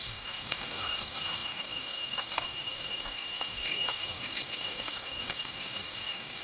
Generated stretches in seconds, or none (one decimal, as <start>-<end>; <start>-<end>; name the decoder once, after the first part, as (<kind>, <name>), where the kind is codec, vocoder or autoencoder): 0.0-6.4 (codec, DAC)